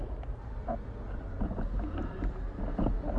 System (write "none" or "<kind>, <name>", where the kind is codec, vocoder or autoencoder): none